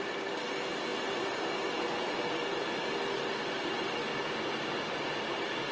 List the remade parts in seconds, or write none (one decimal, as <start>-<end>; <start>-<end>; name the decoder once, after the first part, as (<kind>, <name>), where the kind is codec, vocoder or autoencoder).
none